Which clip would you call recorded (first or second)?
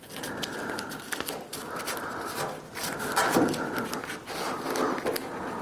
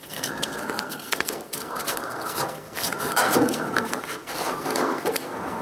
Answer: first